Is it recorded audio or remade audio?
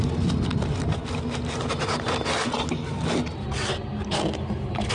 recorded